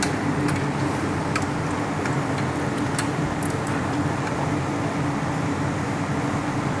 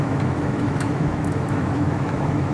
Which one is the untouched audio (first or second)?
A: first